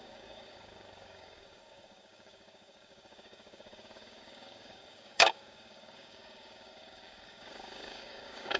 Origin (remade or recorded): remade